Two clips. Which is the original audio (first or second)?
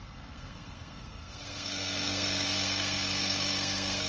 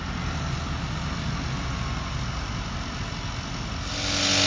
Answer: second